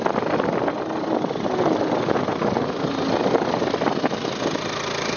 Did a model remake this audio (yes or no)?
no